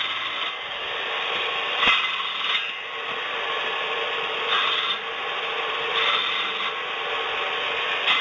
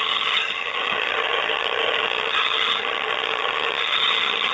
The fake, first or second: second